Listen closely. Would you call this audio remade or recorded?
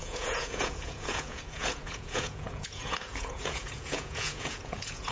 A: remade